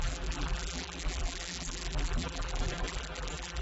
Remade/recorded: remade